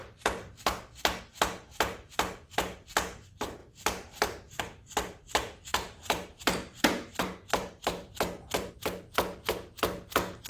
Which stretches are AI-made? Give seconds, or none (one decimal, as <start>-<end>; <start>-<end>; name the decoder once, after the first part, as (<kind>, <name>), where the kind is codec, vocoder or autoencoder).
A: 3.6-4.6 (vocoder, BigVGAN v2); 5.7-8.7